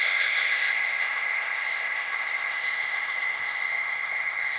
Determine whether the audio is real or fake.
fake